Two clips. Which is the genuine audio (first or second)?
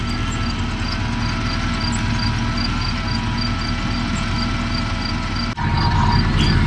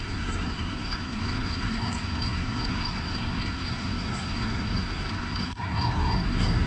first